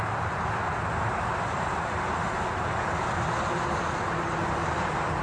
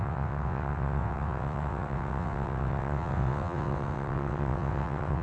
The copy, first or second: second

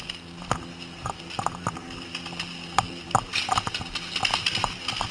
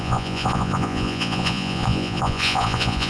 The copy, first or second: second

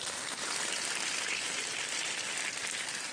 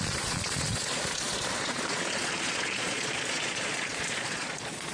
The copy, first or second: second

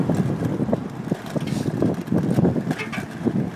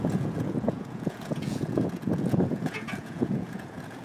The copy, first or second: second